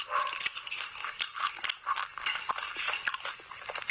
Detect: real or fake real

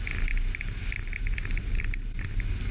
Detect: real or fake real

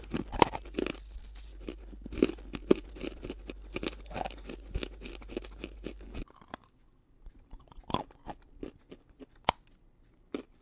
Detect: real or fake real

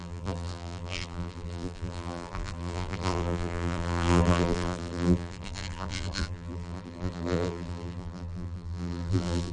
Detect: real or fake fake